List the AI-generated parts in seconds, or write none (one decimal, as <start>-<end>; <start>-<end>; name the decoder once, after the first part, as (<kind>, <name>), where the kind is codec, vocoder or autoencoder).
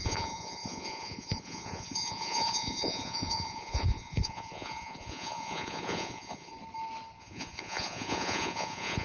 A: 0.0-6.5 (vocoder, Vocos); 7.2-9.0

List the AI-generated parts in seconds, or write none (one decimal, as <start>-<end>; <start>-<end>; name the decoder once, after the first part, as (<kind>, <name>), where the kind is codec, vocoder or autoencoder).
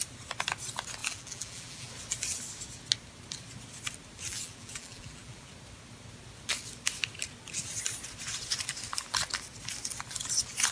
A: 1.0-1.9 (vocoder, BigVGAN v2); 4.3-5.5